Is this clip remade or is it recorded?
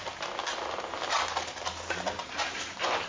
recorded